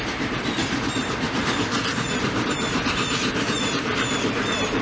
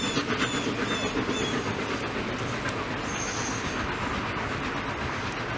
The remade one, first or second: first